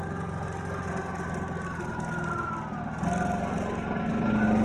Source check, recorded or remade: recorded